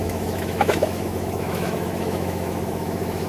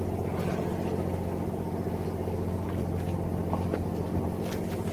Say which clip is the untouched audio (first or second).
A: second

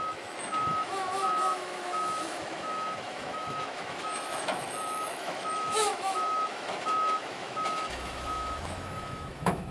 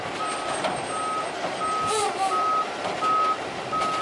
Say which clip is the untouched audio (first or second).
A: second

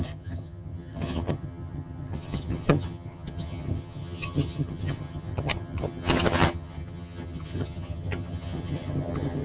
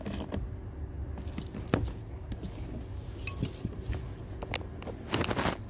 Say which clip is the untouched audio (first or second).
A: second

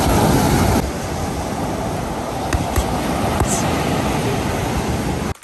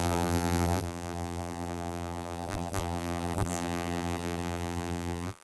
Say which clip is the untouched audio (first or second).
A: first